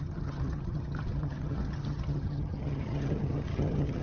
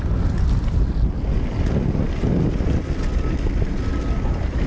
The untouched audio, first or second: second